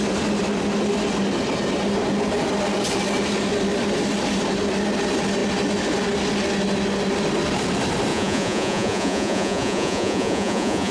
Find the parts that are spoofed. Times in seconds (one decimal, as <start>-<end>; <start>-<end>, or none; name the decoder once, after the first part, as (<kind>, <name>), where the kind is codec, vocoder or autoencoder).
8.1-10.9 (vocoder, Vocos)